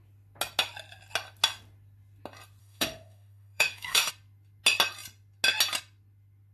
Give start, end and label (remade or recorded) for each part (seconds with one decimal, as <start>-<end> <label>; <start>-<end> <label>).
0.0-2.6 recorded; 2.6-4.1 remade; 4.1-6.5 recorded